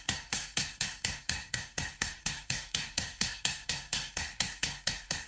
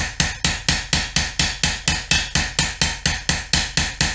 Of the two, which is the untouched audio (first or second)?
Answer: second